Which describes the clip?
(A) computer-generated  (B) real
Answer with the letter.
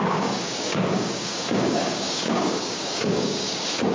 A